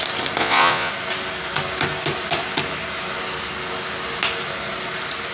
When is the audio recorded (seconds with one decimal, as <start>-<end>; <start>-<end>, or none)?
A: 0.0-0.4; 0.9-5.3

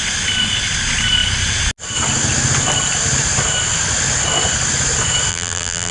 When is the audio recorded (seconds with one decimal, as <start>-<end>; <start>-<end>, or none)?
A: 0.0-5.3

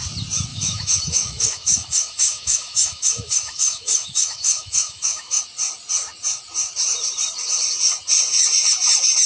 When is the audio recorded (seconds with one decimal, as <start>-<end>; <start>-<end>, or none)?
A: 0.0-0.5; 5.4-9.3

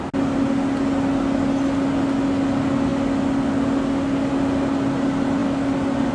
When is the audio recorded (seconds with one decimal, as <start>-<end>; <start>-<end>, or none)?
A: 0.0-6.1

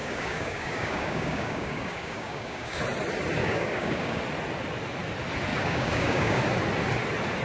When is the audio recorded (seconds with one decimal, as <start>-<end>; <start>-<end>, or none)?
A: 2.8-3.4; 4.2-5.5; 6.4-7.4

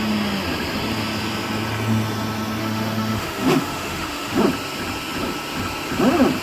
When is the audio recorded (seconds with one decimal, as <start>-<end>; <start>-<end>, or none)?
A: 0.0-2.6; 4.4-6.4

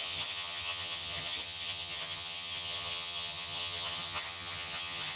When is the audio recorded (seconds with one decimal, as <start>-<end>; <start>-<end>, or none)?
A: none